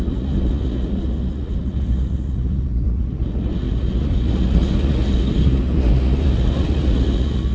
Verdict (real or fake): fake